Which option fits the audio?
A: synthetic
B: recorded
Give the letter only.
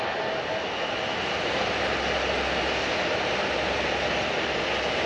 B